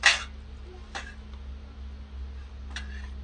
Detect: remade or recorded recorded